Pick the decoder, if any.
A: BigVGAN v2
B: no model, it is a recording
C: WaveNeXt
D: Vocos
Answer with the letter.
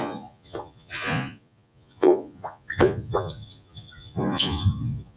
D